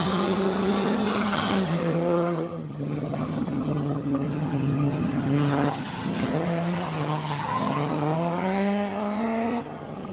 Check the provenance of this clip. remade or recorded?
remade